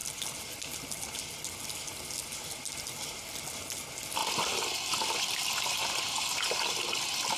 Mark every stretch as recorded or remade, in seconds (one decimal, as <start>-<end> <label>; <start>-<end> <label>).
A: 0.0-7.4 recorded